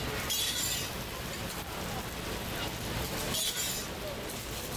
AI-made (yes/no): no